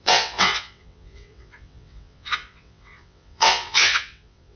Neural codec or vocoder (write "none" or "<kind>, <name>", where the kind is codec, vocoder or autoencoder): vocoder, WaveNeXt